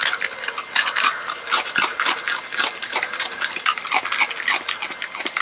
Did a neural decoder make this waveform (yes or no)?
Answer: no